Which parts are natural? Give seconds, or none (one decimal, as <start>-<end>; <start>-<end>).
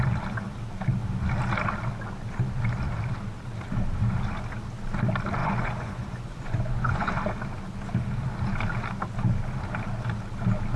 0.0-5.4; 7.1-10.8